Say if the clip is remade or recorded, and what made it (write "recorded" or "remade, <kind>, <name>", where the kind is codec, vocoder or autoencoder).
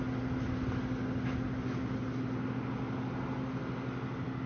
recorded